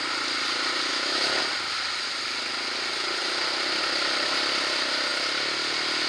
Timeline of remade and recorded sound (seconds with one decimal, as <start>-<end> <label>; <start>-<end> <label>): 0.0-0.9 recorded; 0.9-1.4 remade; 1.4-6.1 recorded